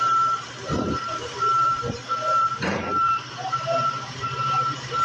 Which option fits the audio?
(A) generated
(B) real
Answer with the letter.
A